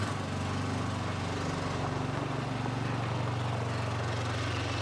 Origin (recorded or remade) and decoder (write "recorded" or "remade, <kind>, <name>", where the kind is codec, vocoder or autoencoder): recorded